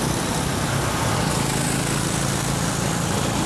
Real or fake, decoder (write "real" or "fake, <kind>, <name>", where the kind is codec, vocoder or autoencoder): real